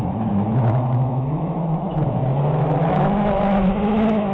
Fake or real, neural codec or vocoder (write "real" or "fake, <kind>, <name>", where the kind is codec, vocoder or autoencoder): fake, autoencoder, DAC-VAE